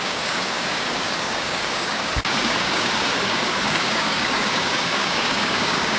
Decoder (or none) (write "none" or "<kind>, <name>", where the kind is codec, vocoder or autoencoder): codec, DAC